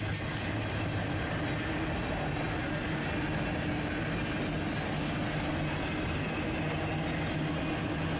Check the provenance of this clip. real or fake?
real